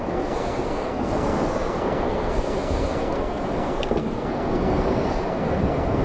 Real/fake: fake